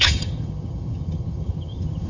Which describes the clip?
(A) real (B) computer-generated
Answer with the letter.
B